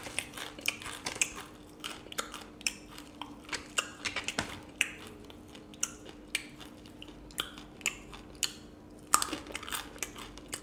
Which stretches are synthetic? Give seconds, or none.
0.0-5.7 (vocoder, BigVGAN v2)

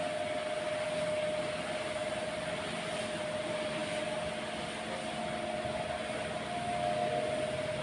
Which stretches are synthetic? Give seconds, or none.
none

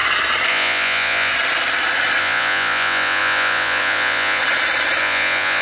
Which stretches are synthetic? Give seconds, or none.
0.5-1.3 (vocoder, Vocos); 2.2-4.4; 5.0-5.6

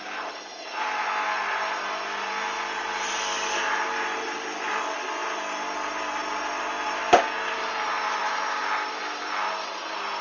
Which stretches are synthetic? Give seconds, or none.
none

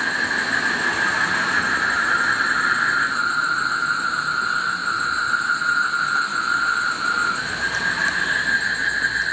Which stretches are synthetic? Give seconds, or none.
none